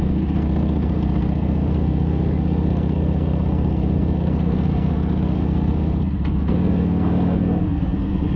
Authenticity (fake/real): fake